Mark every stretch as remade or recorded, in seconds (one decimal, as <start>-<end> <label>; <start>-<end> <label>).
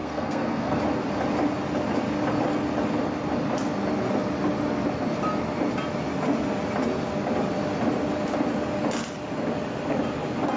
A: 0.0-0.8 remade; 0.8-10.6 recorded